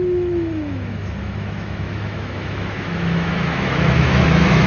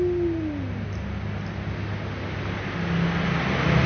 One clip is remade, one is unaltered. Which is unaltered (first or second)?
second